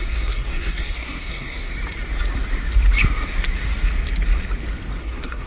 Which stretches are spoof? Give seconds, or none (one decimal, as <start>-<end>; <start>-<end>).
0.0-1.7; 5.0-5.5